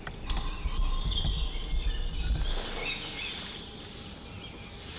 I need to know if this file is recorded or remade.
recorded